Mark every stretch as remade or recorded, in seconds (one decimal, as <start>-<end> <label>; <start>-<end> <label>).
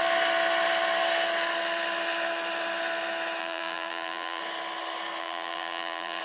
0.0-3.4 recorded; 3.4-4.4 remade; 4.4-5.2 recorded; 5.2-6.2 remade